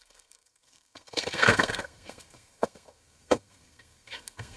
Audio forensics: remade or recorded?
remade